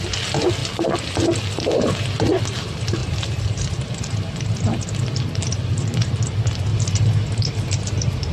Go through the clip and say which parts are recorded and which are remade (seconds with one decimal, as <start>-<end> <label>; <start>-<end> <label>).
0.0-3.0 recorded; 3.0-6.1 remade; 6.1-6.7 recorded; 6.7-8.3 remade